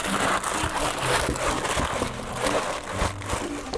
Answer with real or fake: real